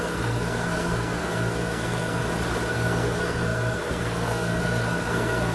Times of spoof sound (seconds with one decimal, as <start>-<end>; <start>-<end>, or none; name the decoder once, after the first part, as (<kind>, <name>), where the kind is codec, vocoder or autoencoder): 0.0-2.2 (codec, SNAC); 2.7-5.5